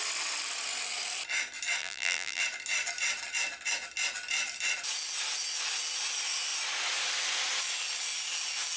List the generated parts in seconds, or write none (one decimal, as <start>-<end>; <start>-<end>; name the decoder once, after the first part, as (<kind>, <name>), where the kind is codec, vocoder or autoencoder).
1.8-2.4 (vocoder, BigVGAN v2)

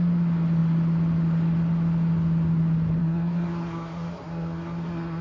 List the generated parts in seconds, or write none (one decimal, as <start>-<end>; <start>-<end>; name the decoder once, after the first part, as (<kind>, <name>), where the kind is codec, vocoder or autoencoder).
3.0-5.2 (codec, SNAC)